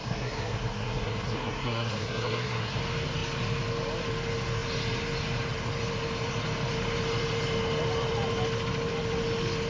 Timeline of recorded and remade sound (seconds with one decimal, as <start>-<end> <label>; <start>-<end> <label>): 0.0-2.8 remade; 2.8-9.7 recorded

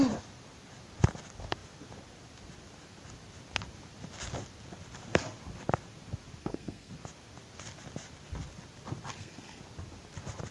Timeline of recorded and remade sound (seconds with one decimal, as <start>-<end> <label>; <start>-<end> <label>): 0.0-6.4 recorded; 6.4-6.9 remade; 6.9-9.1 recorded; 9.1-9.6 remade; 9.6-10.5 recorded

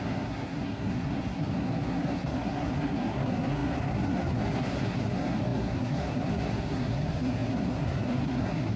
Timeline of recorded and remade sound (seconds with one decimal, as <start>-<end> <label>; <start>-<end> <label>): 0.0-8.8 remade

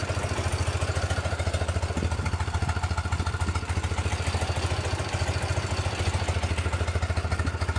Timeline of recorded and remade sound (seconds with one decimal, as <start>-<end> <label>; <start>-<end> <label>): 0.0-7.8 recorded